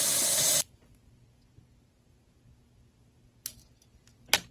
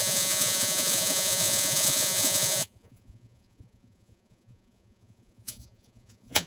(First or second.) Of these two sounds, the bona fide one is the first